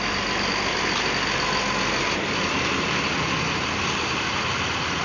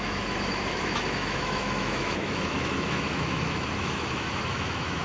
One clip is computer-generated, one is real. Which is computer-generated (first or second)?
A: second